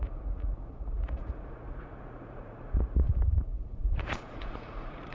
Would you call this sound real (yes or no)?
no